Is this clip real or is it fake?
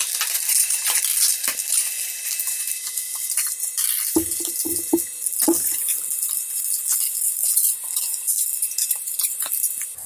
real